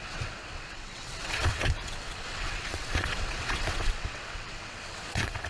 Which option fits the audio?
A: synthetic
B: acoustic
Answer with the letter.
A